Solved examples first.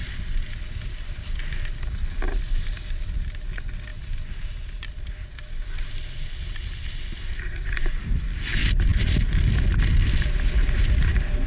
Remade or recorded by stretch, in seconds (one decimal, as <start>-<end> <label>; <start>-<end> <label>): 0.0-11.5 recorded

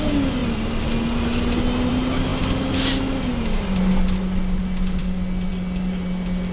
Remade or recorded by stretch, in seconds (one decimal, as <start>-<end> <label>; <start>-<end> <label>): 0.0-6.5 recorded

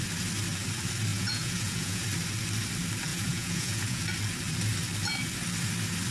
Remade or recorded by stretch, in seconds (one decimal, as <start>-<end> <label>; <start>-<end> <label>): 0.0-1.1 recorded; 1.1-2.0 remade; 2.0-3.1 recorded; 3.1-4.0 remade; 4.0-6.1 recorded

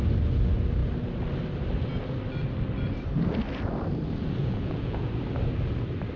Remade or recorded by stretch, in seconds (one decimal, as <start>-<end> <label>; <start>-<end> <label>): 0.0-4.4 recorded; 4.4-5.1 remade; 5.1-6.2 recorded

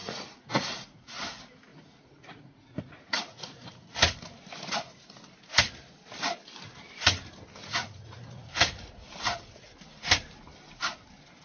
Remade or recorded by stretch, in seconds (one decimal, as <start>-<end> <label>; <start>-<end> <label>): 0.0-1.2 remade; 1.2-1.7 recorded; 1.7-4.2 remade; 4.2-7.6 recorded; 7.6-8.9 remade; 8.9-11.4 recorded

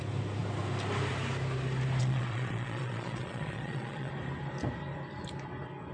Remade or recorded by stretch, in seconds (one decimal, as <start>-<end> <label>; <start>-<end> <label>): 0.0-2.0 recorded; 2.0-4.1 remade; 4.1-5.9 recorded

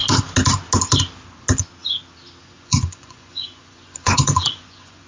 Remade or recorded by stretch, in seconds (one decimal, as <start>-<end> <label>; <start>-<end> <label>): 0.0-2.4 recorded; 2.4-5.1 remade

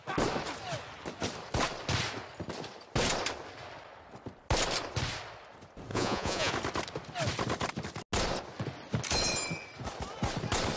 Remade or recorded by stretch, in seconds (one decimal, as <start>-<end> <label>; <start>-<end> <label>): 0.0-5.9 recorded; 5.9-6.5 remade; 6.5-10.8 recorded